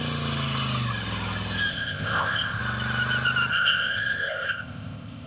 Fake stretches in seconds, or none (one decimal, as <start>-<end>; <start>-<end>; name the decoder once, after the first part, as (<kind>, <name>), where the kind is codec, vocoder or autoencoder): 1.7-2.6 (codec, ZipCodec); 3.5-5.3